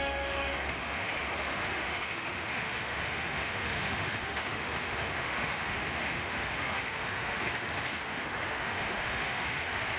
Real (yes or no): no